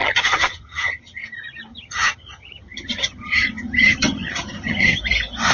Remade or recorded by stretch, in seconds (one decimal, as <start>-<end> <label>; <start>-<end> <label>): 0.0-1.2 remade; 1.2-1.7 recorded; 1.7-5.0 remade; 5.0-5.5 recorded